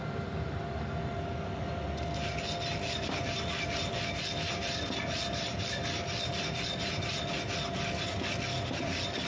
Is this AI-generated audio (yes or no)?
no